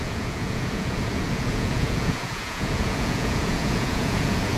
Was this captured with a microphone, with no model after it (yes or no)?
no